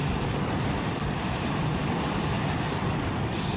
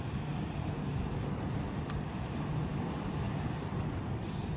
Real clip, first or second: second